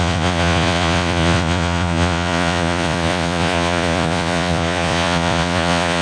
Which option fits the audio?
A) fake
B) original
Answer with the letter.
A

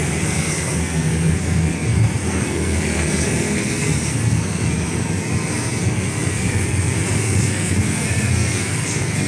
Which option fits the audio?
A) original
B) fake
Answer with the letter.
B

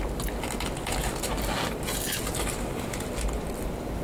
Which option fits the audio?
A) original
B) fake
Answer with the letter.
A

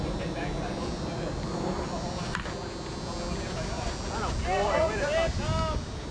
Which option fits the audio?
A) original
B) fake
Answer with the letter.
A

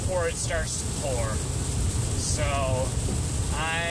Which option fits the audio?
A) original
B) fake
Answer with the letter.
A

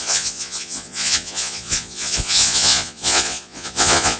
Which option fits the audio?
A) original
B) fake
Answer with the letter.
B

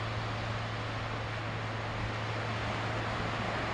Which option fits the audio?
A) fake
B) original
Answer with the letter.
B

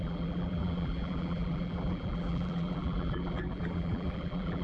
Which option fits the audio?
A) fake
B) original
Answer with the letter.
A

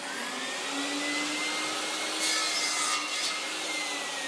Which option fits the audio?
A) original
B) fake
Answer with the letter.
A